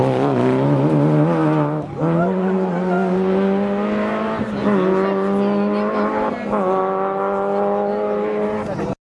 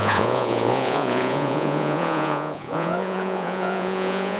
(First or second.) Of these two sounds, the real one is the first